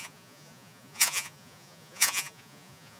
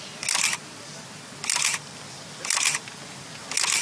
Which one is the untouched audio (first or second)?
second